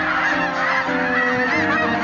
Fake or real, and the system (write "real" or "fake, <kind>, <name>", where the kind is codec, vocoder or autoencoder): real